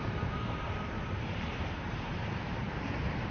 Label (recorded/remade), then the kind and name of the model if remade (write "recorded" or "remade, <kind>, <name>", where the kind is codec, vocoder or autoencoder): remade, vocoder, BigVGAN v2